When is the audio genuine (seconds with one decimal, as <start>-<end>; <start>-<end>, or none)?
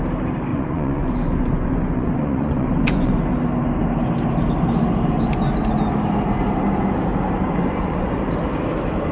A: 0.0-0.5; 3.2-7.6; 8.2-9.1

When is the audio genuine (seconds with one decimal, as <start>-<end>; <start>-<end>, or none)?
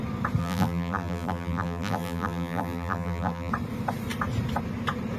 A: 0.0-0.4; 3.5-5.2